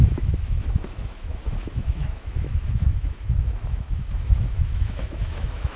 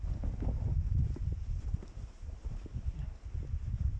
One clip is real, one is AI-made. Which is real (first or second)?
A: second